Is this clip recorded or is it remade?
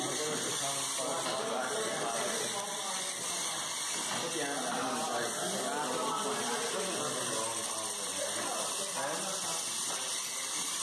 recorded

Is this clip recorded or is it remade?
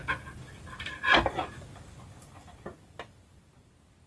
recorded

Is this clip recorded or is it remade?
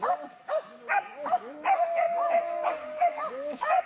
remade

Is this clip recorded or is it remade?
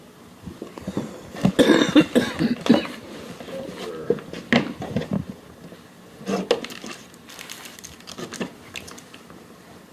recorded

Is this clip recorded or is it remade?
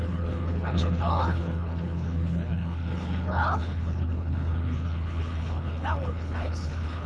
remade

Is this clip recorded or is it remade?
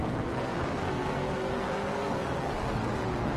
remade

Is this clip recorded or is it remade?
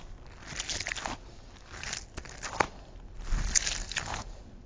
recorded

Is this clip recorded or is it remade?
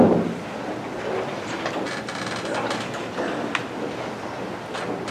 recorded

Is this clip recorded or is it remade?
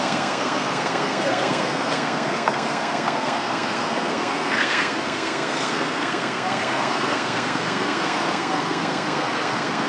remade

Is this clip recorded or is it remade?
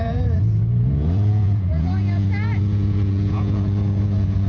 remade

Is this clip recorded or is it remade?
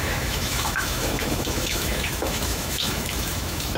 remade